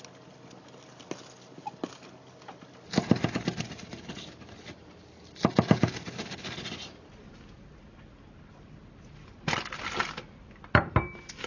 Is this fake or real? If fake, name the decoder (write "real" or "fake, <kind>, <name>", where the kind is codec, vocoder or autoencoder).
real